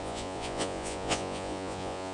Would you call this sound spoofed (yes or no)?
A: yes